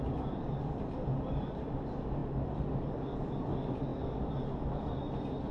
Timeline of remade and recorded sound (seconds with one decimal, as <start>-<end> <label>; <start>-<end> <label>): 0.0-5.5 recorded